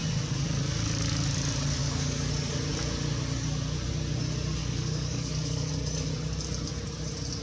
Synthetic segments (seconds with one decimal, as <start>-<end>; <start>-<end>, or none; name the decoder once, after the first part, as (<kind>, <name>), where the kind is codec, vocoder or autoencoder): 1.8-2.3 (codec, DAC); 4.6-5.7